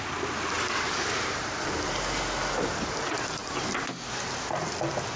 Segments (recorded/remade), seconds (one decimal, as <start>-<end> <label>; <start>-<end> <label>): 0.0-5.2 recorded